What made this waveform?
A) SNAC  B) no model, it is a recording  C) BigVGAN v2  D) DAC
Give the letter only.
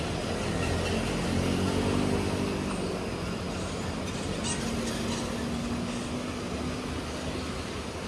B